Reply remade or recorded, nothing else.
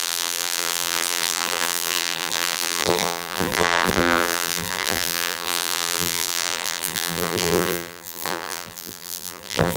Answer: remade